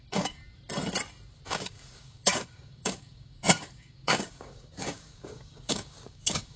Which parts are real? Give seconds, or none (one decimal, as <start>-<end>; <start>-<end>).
0.4-1.5